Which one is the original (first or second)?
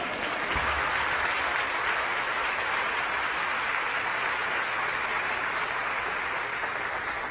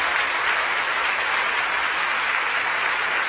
second